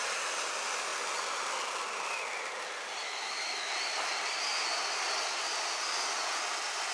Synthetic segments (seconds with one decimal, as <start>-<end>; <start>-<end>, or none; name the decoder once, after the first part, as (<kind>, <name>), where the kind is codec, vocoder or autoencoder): 3.0-3.7 (autoencoder, DAC-VAE)

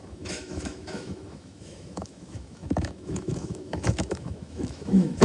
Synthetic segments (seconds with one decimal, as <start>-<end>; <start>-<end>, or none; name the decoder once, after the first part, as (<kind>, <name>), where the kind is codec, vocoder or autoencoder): 0.0-5.2 (autoencoder, DAC-VAE)

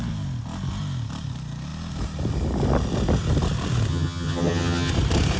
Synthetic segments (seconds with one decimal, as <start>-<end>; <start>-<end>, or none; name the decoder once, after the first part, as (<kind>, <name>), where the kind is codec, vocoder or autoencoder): 3.9-4.9 (vocoder, HiFi-GAN)

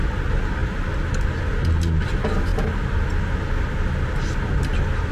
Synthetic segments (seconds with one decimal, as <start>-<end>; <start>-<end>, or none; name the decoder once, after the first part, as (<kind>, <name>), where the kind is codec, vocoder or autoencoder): none

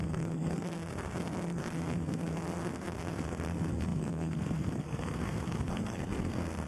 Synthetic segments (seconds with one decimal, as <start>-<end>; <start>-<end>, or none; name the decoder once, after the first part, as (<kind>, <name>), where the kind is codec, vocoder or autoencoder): 0.0-6.7 (codec, SNAC)

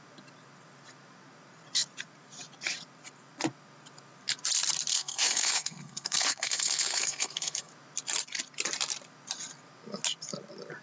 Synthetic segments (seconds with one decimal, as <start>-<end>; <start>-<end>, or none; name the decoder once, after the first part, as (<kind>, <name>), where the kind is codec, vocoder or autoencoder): 4.9-7.7 (codec, SNAC)